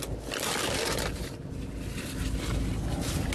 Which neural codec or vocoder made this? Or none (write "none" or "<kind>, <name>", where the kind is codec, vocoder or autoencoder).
none